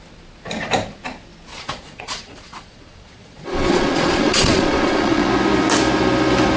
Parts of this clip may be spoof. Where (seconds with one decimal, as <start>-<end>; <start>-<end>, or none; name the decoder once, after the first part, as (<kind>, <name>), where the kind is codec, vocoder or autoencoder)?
1.5-5.3 (vocoder, Vocos)